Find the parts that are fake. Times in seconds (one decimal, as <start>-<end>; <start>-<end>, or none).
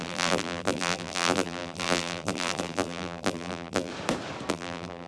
0.0-3.9; 4.5-5.1